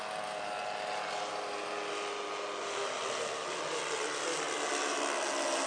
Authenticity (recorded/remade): recorded